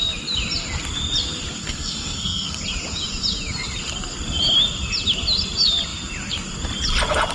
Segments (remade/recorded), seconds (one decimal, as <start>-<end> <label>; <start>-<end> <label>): 0.0-1.6 recorded; 1.6-2.6 remade; 2.6-7.3 recorded